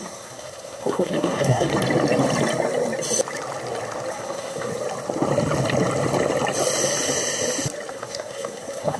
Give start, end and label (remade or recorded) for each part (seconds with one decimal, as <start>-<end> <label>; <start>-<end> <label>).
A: 0.0-1.7 remade; 1.7-4.1 recorded; 4.1-4.7 remade; 4.7-7.9 recorded; 7.9-9.0 remade